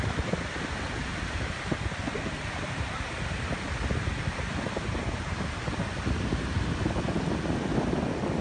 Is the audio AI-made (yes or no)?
no